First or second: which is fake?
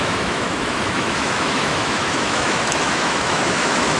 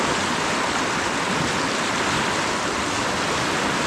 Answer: first